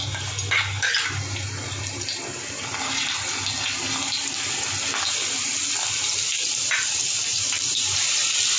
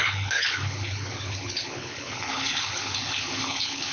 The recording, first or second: first